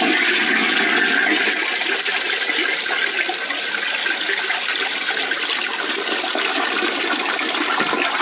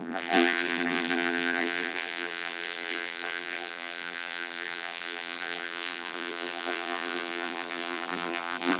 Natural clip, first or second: first